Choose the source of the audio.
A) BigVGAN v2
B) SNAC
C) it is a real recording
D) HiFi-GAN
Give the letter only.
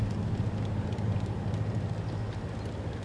C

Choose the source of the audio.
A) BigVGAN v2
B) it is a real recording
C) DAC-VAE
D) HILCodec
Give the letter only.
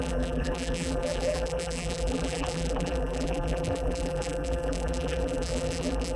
A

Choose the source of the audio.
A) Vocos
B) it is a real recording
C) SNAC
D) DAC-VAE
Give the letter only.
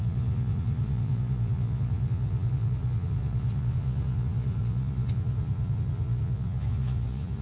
A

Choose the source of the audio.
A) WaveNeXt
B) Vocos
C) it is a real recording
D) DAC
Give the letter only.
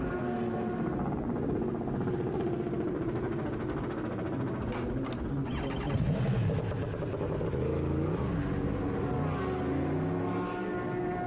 C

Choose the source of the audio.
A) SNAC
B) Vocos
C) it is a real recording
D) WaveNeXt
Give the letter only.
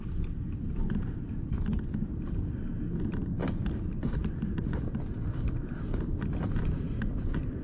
C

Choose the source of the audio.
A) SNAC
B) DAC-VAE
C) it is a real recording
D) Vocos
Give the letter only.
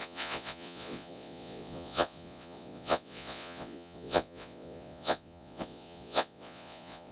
D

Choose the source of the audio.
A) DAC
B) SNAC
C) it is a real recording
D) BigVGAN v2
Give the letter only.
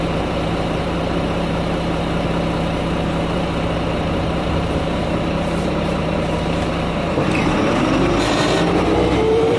D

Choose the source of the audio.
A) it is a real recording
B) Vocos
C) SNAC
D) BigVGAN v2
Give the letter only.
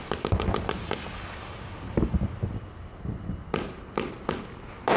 A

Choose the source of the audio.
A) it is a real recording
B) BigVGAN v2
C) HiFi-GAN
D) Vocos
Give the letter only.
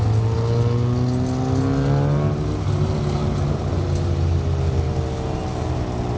A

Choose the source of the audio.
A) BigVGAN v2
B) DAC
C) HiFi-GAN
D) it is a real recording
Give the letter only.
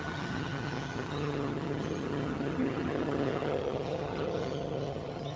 C